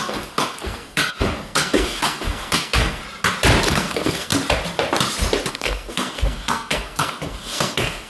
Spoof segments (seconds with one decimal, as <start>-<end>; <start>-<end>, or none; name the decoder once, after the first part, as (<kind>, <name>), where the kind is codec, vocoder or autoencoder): 0.0-3.0 (codec, SNAC); 3.7-4.3; 5.5-8.1